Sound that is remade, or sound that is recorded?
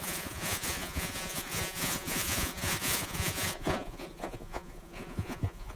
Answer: remade